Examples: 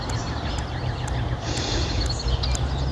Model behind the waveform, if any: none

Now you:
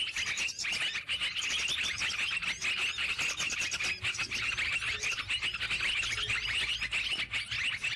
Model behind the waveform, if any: none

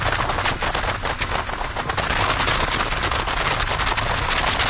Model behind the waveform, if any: none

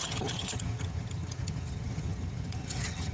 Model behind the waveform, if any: vocoder, HiFi-GAN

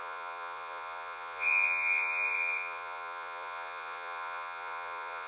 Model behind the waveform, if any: vocoder, Vocos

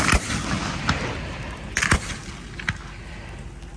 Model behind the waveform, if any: none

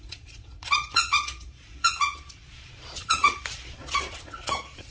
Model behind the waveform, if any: vocoder, Vocos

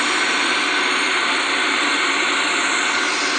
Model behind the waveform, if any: none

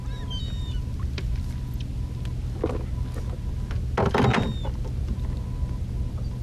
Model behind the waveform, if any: none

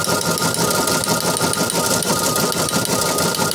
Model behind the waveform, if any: none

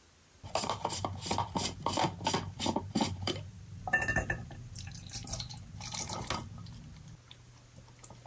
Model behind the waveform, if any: none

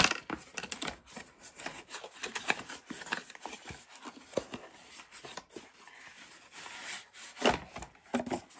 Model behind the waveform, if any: none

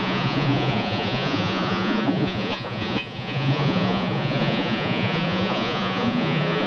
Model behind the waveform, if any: vocoder, Vocos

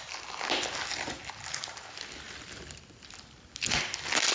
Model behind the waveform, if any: none